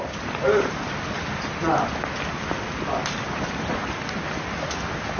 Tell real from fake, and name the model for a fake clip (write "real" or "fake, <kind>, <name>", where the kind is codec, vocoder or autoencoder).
real